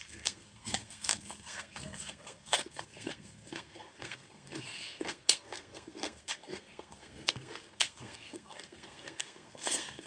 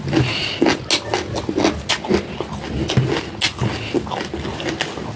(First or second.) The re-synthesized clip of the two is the first